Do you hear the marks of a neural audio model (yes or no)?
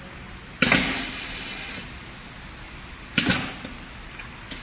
no